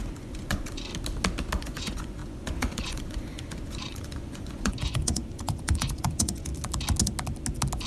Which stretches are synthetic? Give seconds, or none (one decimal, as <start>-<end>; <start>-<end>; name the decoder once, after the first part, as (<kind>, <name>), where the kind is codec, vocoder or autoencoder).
0.0-0.9 (vocoder, Vocos); 1.6-6.5